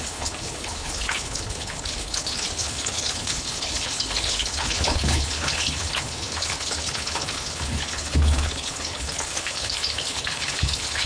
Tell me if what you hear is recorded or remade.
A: remade